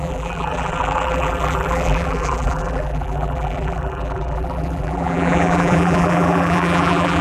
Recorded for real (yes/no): no